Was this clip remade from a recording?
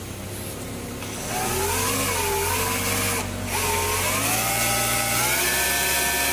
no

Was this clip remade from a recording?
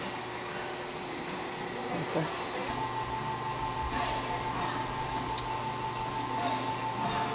no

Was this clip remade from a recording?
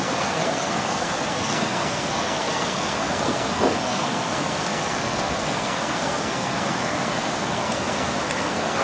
yes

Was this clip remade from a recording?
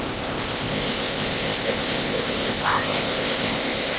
yes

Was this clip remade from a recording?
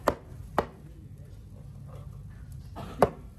no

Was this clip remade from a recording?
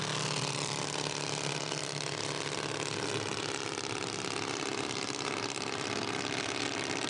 no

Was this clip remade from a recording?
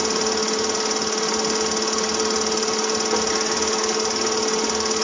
no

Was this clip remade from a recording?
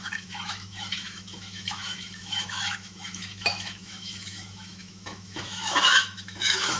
yes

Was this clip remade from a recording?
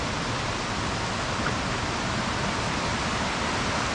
no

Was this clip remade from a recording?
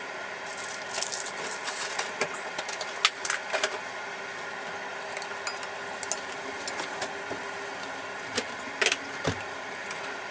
no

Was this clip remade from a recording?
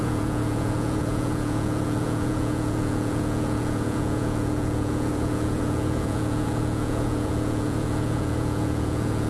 yes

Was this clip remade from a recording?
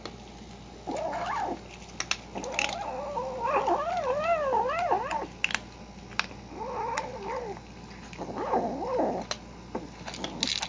no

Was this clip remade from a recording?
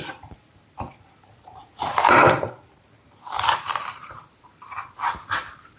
yes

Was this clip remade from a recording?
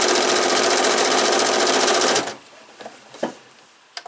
no